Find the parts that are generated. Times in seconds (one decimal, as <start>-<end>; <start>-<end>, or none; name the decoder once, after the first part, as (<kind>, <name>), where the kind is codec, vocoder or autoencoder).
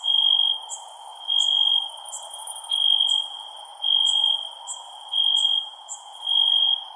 5.6-6.2 (vocoder, Vocos)